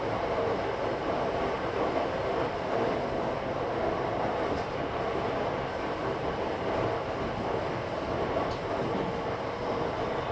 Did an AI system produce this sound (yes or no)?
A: no